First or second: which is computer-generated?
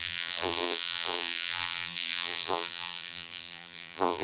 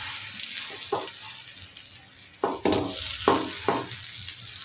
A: first